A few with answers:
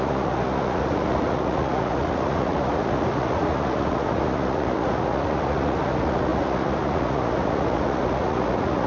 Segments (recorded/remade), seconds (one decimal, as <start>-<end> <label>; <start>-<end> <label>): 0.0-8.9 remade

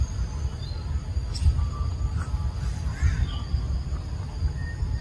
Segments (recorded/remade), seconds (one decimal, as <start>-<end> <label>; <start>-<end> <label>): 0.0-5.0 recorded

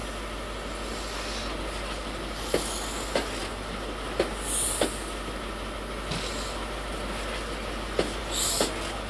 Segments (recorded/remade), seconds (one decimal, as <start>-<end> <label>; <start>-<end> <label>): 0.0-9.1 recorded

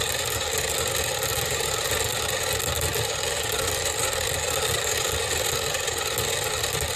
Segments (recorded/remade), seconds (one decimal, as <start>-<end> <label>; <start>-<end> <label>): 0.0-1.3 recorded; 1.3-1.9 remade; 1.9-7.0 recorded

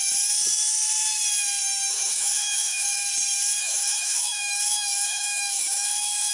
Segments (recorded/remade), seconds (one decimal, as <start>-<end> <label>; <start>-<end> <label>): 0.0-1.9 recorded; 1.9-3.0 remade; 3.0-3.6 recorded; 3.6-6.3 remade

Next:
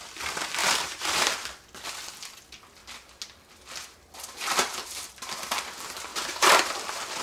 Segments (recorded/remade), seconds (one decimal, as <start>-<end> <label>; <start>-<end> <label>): 0.0-0.6 recorded; 0.6-1.4 remade; 1.4-6.1 recorded; 6.1-6.6 remade; 6.6-7.2 recorded

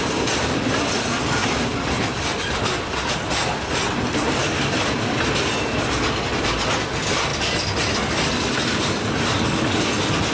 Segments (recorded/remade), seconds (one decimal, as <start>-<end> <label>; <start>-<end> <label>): 0.0-10.3 recorded